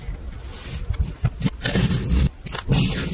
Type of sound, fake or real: real